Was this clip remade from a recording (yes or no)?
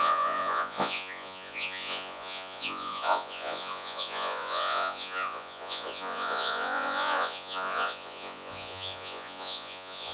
yes